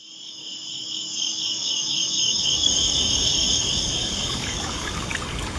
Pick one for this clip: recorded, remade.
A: remade